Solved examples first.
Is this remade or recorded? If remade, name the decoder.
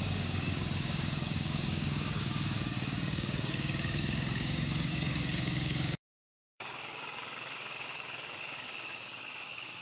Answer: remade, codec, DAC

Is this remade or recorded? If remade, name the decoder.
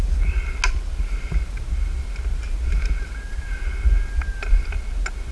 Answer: recorded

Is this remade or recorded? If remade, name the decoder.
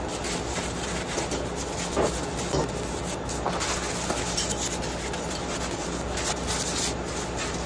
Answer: recorded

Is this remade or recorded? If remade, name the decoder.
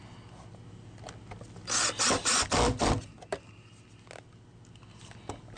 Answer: recorded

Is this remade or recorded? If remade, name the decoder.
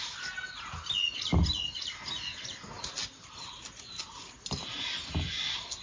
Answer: recorded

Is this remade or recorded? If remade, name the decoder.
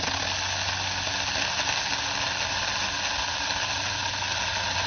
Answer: recorded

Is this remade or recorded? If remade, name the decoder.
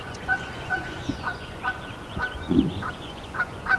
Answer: remade, vocoder, Vocos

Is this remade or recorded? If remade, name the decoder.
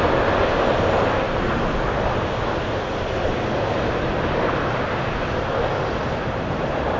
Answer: recorded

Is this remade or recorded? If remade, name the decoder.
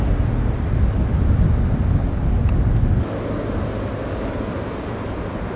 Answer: recorded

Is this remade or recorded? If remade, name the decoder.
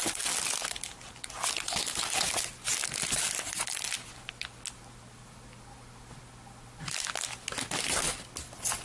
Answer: recorded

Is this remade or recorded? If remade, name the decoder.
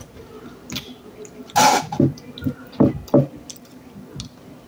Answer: recorded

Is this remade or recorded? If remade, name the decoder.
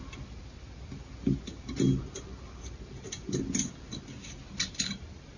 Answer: recorded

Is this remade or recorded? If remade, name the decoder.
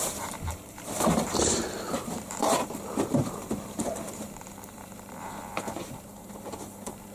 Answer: remade, vocoder, BigVGAN v2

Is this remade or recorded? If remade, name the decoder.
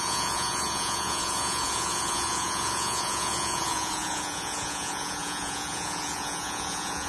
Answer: remade, vocoder, Vocos